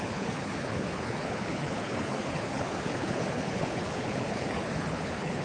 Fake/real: fake